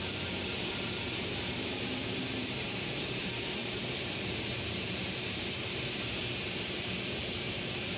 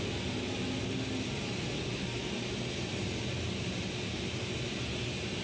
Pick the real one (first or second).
second